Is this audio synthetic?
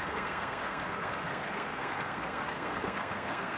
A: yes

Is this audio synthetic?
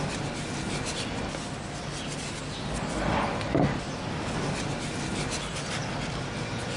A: no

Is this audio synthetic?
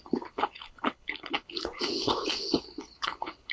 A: yes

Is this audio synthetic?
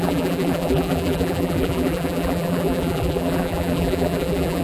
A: yes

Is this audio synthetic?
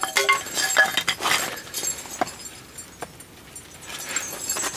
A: no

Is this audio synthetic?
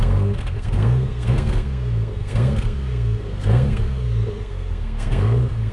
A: yes